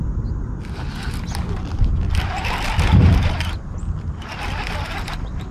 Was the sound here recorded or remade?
recorded